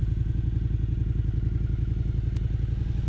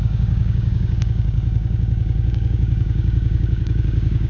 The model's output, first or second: second